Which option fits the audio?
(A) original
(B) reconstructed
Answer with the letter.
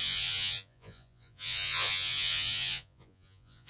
B